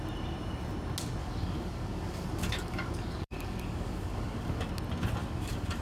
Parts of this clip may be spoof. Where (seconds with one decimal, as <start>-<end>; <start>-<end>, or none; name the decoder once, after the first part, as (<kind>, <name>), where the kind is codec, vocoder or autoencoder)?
1.2-4.7 (codec, DAC); 5.2-5.8